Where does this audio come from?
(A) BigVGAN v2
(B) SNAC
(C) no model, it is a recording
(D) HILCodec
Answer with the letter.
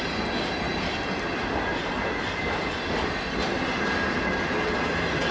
C